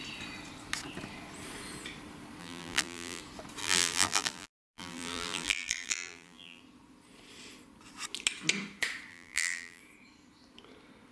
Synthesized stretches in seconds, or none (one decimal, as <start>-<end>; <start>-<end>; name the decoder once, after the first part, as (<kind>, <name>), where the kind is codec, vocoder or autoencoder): 2.4-3.2 (vocoder, BigVGAN v2); 3.6-6.6; 9.1-9.8